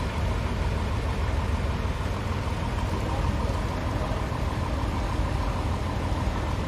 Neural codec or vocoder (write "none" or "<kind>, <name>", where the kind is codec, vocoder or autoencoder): none